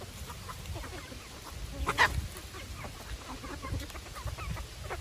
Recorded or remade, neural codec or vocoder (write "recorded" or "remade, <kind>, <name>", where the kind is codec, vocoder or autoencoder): recorded